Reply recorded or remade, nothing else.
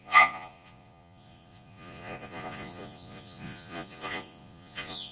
remade